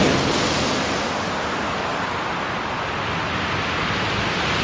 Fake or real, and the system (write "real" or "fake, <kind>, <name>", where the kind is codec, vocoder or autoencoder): real